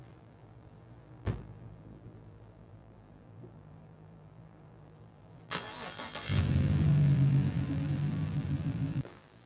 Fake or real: fake